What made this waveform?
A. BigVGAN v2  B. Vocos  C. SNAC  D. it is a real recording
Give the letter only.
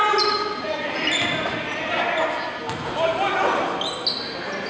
D